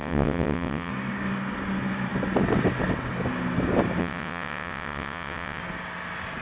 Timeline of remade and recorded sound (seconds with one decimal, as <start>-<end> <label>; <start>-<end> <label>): 0.0-0.9 remade; 0.9-4.0 recorded; 4.0-5.6 remade; 5.6-6.4 recorded